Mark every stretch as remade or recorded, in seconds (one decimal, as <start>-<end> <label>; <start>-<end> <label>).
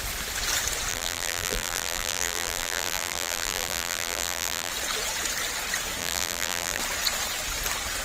0.0-0.9 recorded; 0.9-4.7 remade; 4.7-6.0 recorded; 6.0-6.8 remade; 6.8-8.0 recorded